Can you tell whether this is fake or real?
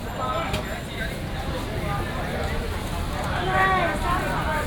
real